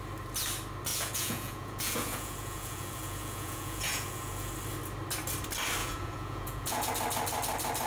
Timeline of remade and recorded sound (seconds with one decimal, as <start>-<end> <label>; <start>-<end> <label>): 0.0-0.9 recorded; 0.9-4.5 remade; 4.5-5.8 recorded; 5.8-6.9 remade; 6.9-7.9 recorded